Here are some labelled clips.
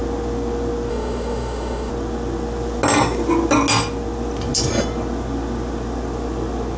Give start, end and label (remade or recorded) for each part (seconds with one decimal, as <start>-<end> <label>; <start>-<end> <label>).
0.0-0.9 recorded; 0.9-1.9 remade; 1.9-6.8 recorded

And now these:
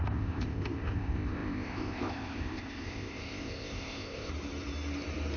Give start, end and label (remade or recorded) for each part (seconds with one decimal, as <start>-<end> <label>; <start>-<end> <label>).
0.0-4.3 remade; 4.3-5.4 recorded

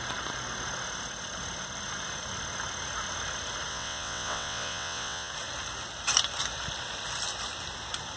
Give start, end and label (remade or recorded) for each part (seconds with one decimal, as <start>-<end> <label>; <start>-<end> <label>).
0.0-3.7 recorded; 3.7-5.3 remade; 5.3-8.2 recorded